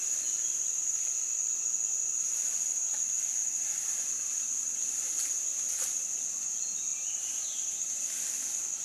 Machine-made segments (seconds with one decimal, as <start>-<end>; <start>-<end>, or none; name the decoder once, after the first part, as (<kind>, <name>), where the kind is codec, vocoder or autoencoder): none